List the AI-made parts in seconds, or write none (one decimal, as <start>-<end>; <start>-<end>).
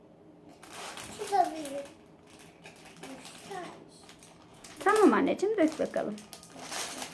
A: 4.5-5.2